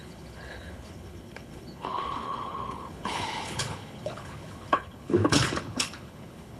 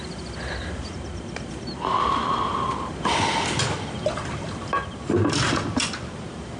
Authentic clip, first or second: second